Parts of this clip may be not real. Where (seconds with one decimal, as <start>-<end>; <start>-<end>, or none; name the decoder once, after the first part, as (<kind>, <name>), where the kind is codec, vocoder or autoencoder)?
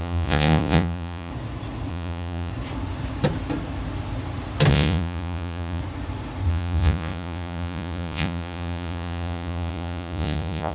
0.0-1.3 (vocoder, Vocos); 1.9-2.5; 4.7-5.8; 6.5-10.7